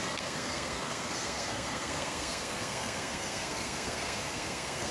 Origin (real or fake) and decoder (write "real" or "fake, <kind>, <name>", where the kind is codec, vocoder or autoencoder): fake, codec, SNAC